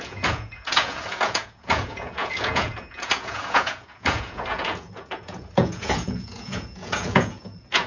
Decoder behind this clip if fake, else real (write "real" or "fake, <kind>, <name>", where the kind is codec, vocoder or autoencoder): fake, vocoder, Vocos